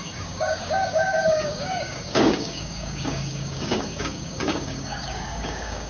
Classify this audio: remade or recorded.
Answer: remade